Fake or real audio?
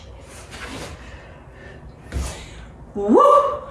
real